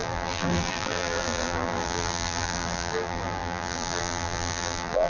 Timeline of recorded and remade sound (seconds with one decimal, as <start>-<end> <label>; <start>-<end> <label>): 0.0-5.1 remade